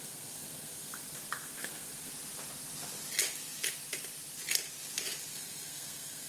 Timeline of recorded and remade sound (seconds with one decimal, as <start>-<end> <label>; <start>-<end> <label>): 0.0-2.1 remade; 2.1-5.3 recorded; 5.3-6.3 remade